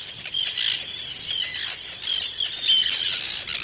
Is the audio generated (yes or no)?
no